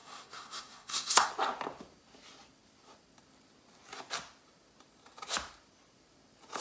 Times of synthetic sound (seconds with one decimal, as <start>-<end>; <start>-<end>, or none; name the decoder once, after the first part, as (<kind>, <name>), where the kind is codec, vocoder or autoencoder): 0.0-1.3 (codec, SNAC)